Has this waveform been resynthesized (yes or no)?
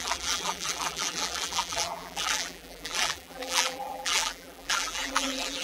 yes